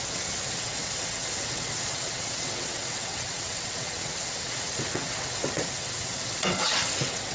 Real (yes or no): no